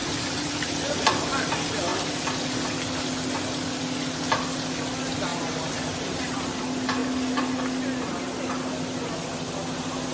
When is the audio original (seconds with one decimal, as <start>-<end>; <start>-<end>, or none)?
1.2-5.3; 6.6-10.1